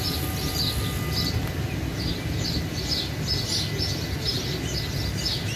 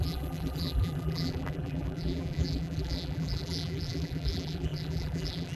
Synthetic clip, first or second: second